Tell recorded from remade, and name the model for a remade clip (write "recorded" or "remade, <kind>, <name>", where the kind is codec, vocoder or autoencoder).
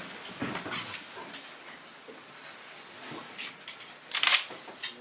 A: recorded